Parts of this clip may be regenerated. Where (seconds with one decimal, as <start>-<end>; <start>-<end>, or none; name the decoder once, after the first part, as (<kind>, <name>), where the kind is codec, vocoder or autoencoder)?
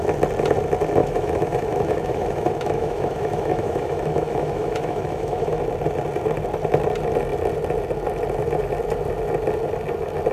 1.0-5.6 (autoencoder, DAC-VAE)